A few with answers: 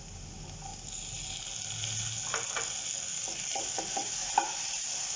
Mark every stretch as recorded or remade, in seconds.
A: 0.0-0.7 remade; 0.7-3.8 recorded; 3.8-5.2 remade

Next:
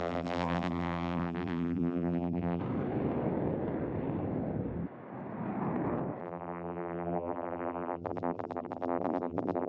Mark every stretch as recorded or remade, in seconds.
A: 0.0-2.6 remade; 2.6-6.2 recorded; 6.2-9.7 remade